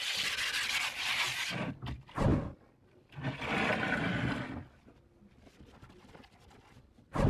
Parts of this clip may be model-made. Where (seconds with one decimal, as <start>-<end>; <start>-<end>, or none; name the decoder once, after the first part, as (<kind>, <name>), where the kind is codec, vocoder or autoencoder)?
none